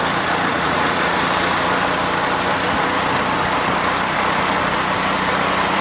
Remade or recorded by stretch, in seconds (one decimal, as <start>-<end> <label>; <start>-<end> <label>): 0.0-0.5 recorded; 0.5-1.1 remade; 1.1-5.8 recorded